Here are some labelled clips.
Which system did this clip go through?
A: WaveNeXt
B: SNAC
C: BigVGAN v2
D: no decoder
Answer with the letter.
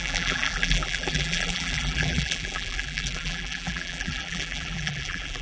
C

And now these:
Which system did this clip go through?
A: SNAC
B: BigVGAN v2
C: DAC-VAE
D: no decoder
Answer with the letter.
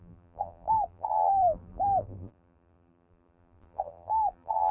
B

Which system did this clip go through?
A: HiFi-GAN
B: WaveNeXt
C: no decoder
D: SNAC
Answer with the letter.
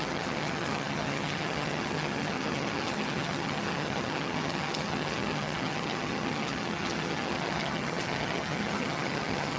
A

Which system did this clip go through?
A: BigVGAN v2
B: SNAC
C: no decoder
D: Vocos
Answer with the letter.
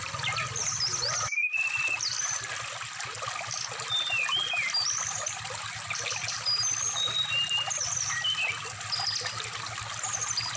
C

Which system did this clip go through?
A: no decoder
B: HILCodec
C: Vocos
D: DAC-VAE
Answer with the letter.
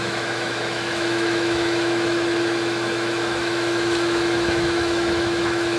D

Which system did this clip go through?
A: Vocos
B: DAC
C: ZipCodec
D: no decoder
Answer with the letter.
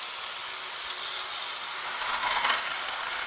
D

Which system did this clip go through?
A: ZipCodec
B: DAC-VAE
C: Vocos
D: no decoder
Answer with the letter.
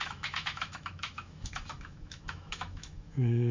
B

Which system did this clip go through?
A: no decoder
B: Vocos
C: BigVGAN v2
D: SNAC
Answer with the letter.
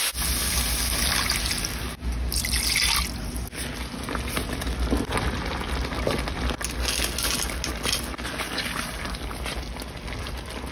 A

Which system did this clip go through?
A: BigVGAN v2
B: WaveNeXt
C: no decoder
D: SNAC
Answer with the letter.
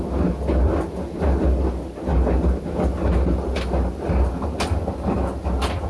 C